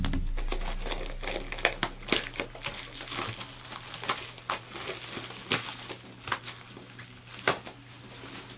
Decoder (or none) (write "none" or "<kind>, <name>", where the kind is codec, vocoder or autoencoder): none